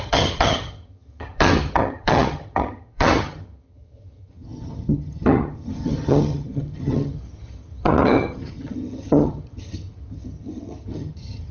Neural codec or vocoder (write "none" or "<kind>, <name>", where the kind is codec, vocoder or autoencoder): vocoder, HiFi-GAN